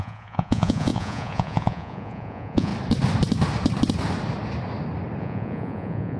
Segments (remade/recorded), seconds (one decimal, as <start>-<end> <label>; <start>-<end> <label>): 0.0-2.7 remade; 2.7-5.2 recorded; 5.2-6.2 remade